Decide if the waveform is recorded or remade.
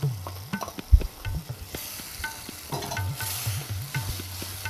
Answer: recorded